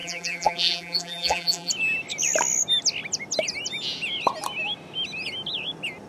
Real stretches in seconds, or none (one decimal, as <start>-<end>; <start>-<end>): 1.7-6.1